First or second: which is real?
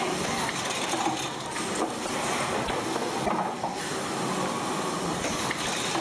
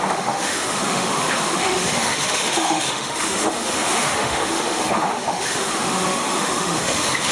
first